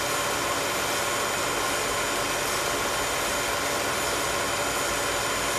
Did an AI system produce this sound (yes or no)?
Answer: no